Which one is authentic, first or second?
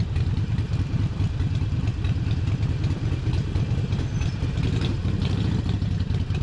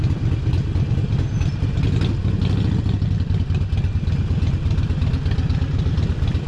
second